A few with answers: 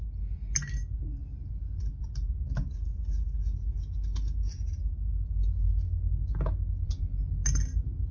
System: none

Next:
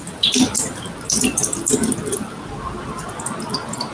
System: none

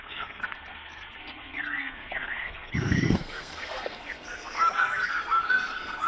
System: codec, SNAC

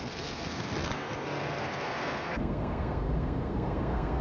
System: codec, SNAC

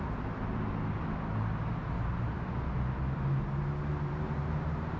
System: none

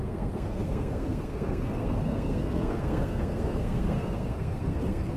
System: codec, SNAC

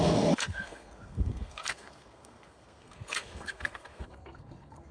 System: codec, SNAC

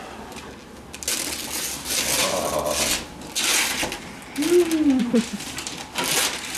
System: none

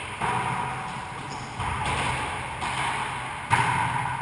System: none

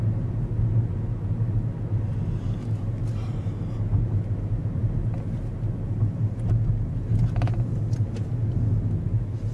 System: none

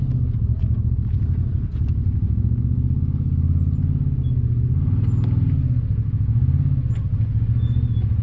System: none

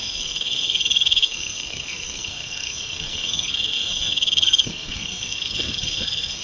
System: codec, SNAC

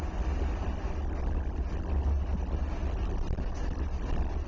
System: none